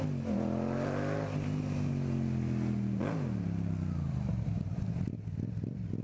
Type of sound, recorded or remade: recorded